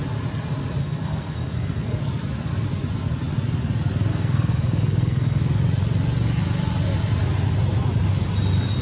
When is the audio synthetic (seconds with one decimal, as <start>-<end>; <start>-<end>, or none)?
0.8-2.0; 4.1-5.4